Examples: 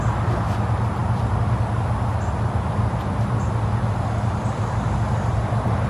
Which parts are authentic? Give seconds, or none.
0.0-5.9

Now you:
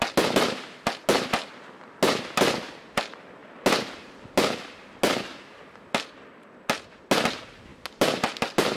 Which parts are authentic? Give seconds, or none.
0.0-8.8